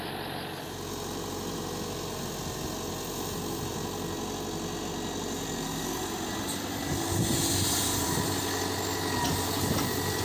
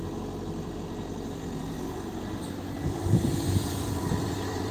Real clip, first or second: first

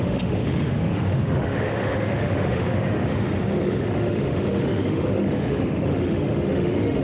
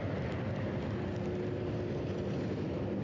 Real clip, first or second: second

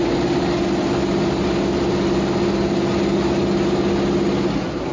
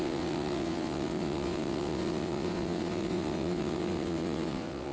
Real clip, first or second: first